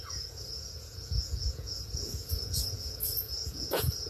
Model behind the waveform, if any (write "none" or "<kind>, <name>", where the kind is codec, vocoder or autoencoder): vocoder, Vocos